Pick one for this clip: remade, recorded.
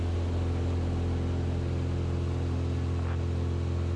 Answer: recorded